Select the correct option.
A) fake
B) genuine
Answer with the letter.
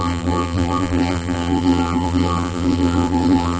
A